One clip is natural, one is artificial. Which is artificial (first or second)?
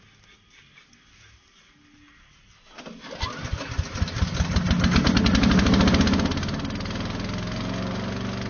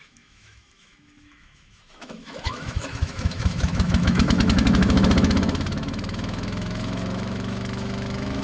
second